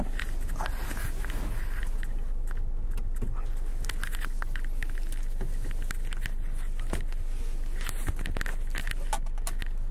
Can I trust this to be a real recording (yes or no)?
yes